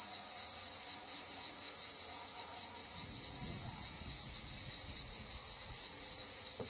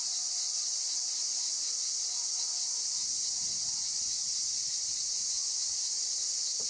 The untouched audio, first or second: second